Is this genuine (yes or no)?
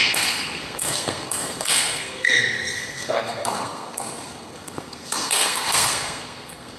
no